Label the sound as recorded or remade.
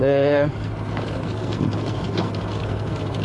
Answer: remade